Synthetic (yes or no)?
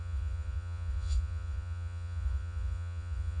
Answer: yes